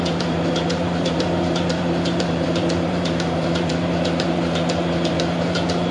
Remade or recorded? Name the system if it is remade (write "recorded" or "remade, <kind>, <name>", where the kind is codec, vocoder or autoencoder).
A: remade, vocoder, BigVGAN v2